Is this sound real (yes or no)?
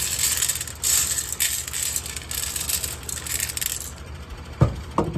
yes